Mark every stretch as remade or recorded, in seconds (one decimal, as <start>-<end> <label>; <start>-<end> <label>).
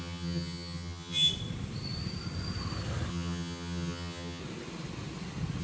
0.0-1.3 remade; 1.3-3.1 recorded; 3.1-4.4 remade; 4.4-5.6 recorded